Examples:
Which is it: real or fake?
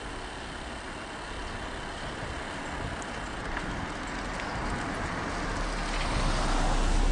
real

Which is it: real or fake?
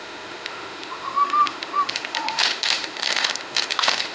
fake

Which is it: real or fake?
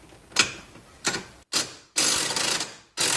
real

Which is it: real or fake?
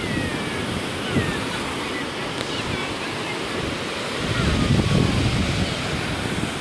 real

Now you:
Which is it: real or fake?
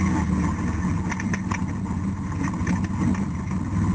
real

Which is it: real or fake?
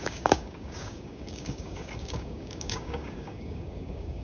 fake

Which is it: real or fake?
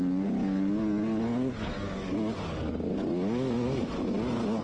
real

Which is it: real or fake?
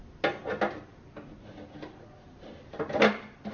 real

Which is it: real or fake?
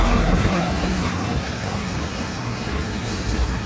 fake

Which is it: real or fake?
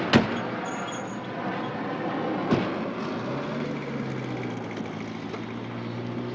real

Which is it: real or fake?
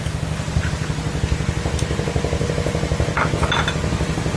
real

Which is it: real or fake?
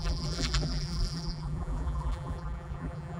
fake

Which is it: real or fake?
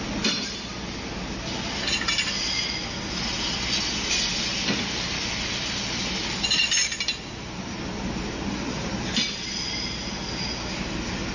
real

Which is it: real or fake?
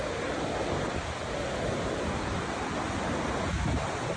real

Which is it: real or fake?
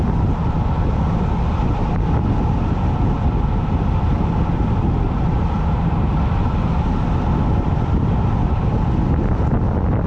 real